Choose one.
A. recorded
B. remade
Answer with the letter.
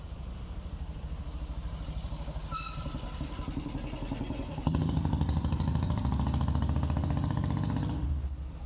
B